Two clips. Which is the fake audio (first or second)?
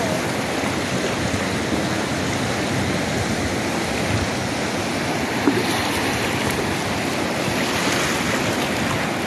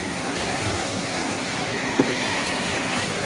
second